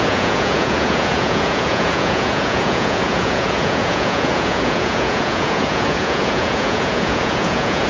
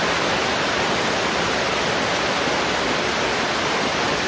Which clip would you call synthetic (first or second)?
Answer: first